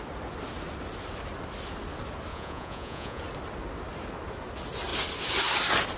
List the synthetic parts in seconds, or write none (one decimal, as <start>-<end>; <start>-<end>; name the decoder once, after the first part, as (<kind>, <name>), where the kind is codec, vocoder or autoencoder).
2.3-3.2 (vocoder, Vocos)